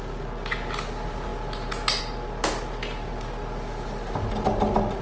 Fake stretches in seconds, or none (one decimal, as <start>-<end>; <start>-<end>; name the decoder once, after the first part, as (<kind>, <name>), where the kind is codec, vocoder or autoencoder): none